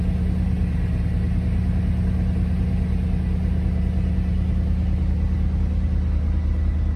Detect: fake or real real